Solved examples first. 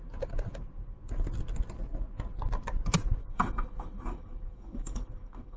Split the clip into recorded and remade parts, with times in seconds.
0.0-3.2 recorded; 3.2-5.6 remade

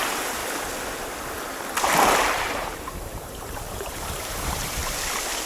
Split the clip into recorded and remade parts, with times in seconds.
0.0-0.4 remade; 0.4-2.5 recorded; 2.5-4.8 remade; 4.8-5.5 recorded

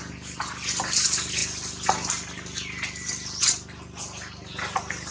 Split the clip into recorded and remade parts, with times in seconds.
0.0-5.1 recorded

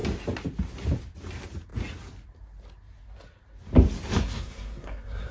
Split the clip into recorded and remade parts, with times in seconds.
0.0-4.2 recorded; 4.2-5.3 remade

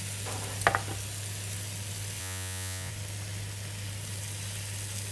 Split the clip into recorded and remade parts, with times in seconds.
0.0-2.2 recorded; 2.2-2.9 remade; 2.9-5.1 recorded

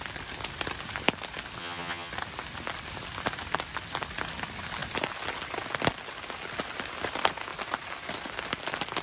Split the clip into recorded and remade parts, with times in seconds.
0.0-1.6 recorded; 1.6-2.1 remade; 2.1-9.0 recorded